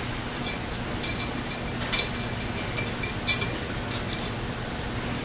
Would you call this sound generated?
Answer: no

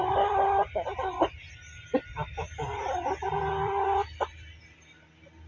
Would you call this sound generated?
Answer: no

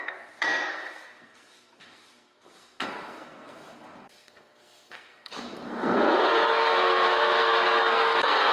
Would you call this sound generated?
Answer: yes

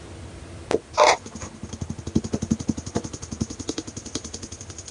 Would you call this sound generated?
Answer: no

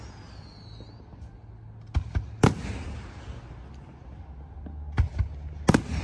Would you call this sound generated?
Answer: no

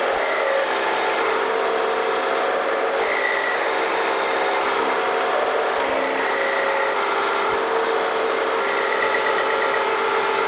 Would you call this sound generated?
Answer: no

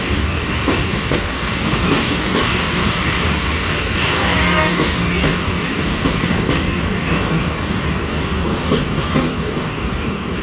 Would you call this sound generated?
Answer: yes